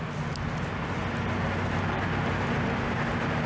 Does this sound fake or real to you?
real